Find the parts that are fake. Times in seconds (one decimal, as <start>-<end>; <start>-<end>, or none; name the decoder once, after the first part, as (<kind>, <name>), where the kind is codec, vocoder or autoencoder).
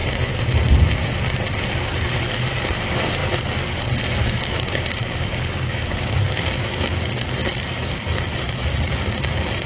4.2-6.5 (codec, DAC)